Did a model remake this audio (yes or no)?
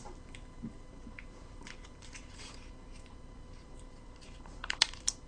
yes